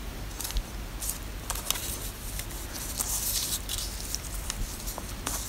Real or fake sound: real